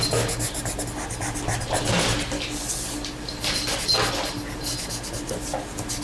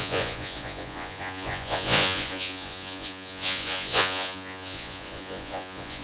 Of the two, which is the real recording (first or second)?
first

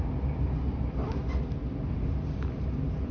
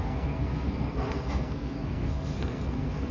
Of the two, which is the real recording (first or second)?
first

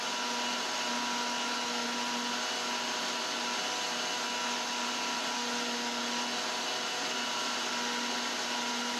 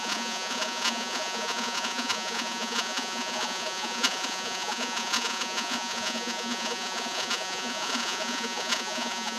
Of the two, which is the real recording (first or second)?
first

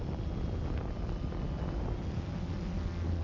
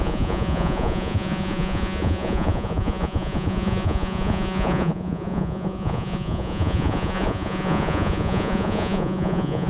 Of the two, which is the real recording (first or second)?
first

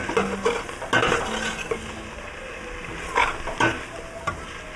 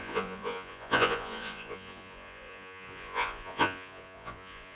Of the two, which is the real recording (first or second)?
first